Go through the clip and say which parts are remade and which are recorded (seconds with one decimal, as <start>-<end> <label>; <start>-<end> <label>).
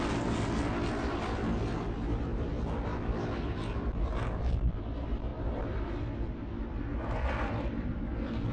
0.0-8.5 recorded